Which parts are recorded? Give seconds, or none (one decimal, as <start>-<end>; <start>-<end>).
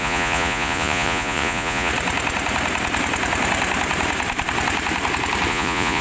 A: 1.9-5.5